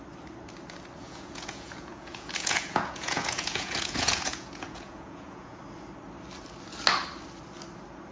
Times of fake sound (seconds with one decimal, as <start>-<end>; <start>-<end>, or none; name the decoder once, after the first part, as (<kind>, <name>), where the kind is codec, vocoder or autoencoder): 1.0-5.6 (vocoder, Vocos)